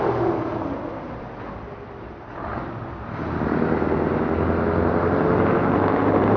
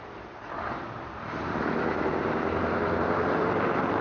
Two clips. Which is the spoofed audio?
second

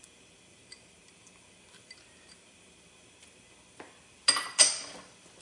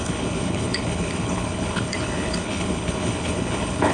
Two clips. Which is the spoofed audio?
second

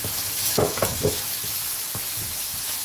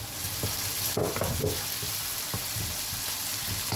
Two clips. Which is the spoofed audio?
first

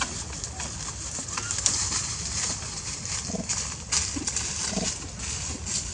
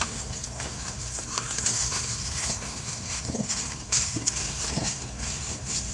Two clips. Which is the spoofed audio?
second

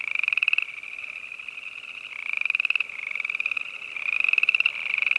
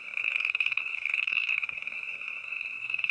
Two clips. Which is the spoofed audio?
second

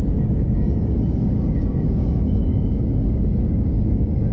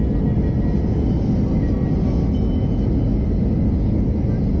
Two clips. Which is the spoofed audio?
first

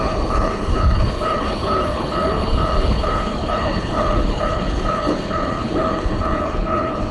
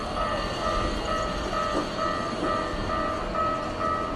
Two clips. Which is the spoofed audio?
first